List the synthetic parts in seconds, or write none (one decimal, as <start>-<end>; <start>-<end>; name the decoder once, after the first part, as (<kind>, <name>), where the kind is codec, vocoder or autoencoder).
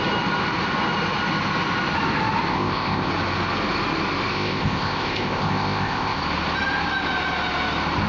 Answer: 2.5-3.1 (codec, ZipCodec); 4.3-6.2